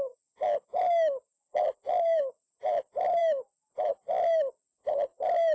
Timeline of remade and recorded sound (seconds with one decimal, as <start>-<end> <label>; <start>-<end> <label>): 0.0-1.3 recorded; 1.3-2.2 remade; 2.2-5.5 recorded